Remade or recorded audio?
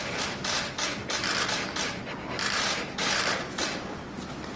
recorded